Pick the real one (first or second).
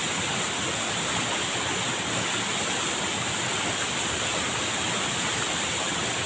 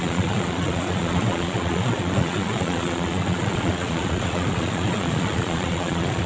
first